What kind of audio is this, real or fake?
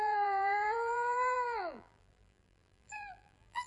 fake